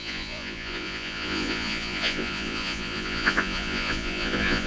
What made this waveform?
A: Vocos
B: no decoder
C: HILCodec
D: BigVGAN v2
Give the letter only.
A